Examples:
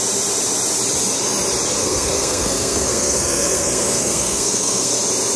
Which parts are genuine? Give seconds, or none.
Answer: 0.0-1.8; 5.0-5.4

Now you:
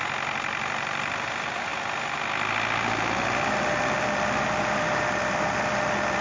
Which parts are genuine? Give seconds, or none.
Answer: 0.0-6.2

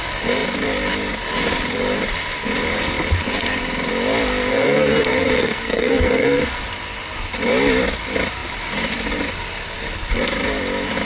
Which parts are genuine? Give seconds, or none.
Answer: 0.0-4.5; 6.6-11.0

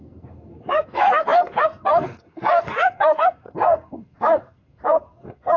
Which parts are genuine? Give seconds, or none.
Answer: none

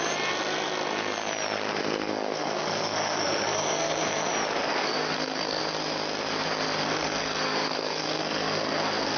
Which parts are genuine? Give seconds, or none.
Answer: 0.0-1.8; 4.3-4.7; 5.6-6.8